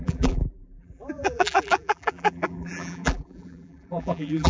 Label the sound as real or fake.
fake